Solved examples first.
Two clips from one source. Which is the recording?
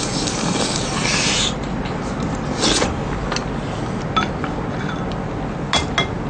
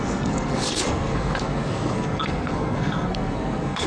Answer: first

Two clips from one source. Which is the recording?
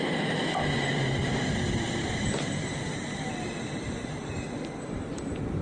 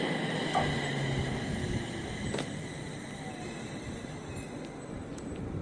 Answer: second